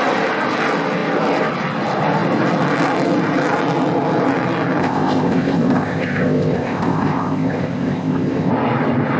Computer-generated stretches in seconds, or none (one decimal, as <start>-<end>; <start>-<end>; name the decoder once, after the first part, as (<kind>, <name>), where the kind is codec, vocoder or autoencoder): 4.8-8.5 (codec, ZipCodec)